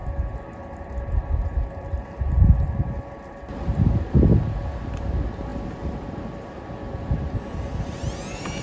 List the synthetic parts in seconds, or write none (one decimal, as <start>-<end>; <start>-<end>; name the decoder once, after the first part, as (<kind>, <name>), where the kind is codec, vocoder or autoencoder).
none